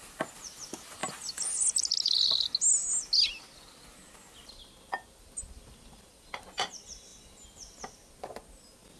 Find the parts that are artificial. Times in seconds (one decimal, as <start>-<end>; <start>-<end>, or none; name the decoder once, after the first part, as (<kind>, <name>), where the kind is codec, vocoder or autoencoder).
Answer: none